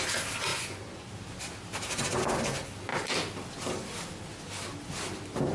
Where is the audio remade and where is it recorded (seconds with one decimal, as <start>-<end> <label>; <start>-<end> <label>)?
0.0-0.5 recorded; 0.5-1.1 remade; 1.1-5.5 recorded